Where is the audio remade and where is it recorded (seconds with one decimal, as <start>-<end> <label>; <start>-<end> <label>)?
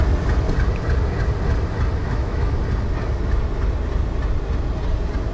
0.0-2.0 recorded; 2.0-2.5 remade; 2.5-5.3 recorded